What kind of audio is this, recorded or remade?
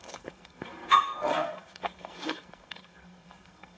remade